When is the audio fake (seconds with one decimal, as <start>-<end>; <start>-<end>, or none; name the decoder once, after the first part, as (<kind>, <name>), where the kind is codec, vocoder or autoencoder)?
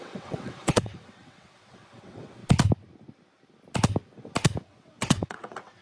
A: 0.0-2.4 (vocoder, WaveNeXt); 4.6-5.8